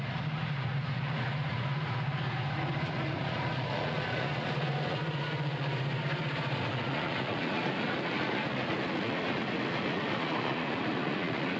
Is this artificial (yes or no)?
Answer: yes